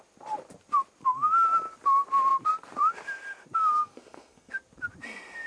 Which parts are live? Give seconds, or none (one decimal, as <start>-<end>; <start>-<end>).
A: 0.0-3.6; 4.5-5.5